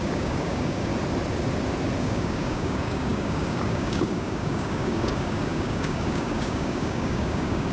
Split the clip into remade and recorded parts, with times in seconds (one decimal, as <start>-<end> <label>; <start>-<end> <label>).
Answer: 0.0-0.9 remade; 0.9-2.0 recorded; 2.0-7.7 remade